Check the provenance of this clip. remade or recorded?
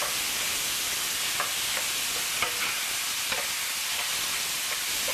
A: recorded